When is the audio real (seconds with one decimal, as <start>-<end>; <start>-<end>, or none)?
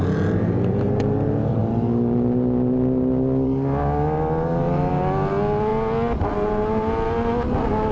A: 0.0-7.9